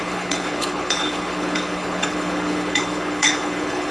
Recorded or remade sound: remade